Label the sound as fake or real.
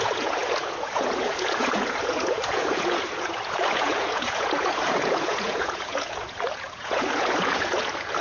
fake